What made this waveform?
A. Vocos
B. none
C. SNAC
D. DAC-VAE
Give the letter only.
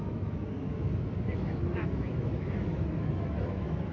D